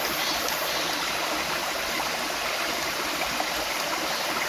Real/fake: real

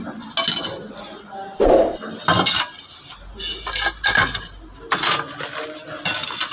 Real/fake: real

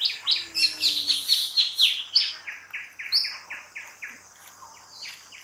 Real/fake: real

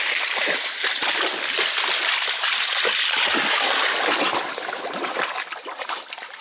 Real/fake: real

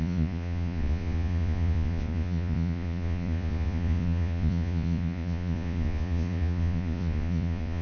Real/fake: fake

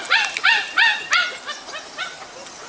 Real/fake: real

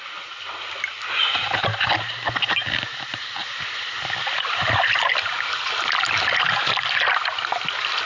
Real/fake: real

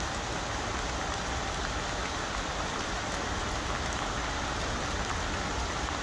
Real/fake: real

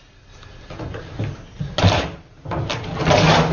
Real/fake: real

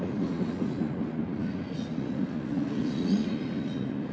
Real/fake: fake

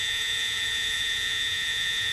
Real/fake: fake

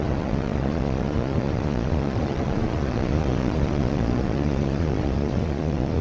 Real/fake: fake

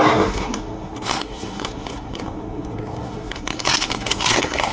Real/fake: fake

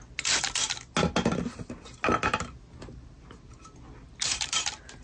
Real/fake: real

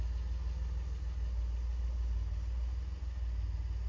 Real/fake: real